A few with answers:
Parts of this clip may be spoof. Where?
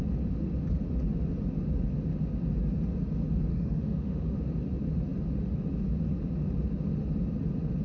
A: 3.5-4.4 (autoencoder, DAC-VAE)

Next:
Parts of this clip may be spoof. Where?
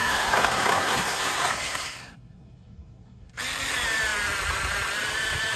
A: 0.0-3.4 (codec, SNAC)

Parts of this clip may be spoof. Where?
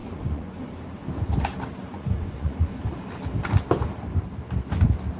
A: 0.0-0.7 (vocoder, Vocos); 1.8-2.8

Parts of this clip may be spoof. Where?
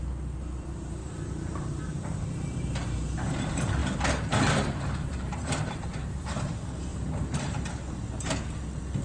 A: 1.0-3.3 (vocoder, BigVGAN v2); 3.8-6.1; 6.9-7.7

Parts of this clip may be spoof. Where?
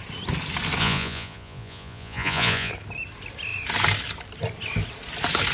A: 0.8-2.7 (vocoder, Vocos)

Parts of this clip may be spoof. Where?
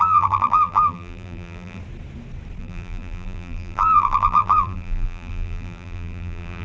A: 0.0-1.8 (vocoder, BigVGAN v2); 2.6-6.6